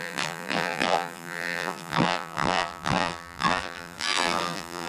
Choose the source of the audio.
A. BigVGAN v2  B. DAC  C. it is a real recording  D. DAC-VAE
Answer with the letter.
A